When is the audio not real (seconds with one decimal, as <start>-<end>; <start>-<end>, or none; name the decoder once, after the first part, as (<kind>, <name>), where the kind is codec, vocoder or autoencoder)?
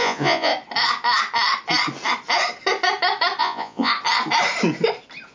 0.0-0.5 (vocoder, Vocos); 3.4-3.9